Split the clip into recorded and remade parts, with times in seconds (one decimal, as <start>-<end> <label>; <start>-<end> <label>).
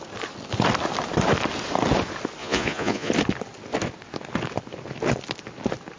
0.0-2.4 recorded; 2.4-3.1 remade; 3.1-6.0 recorded